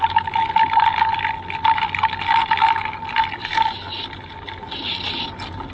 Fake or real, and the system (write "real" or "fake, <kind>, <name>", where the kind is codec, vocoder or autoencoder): real